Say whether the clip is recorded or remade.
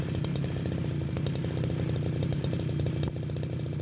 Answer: recorded